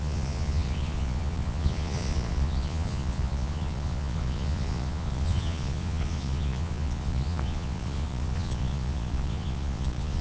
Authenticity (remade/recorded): remade